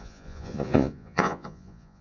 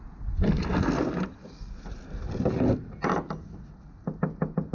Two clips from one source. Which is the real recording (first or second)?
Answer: second